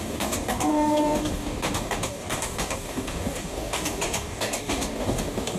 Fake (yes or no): yes